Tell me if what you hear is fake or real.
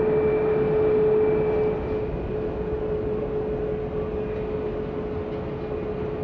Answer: real